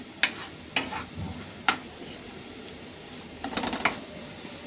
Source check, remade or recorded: recorded